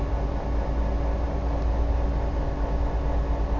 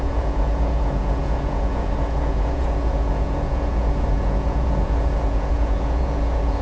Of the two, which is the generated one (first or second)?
second